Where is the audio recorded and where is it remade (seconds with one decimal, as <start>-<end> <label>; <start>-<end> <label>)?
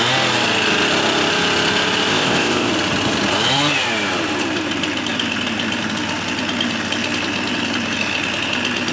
0.0-2.1 recorded; 2.1-2.7 remade; 2.7-8.9 recorded